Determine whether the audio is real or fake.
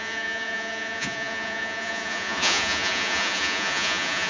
fake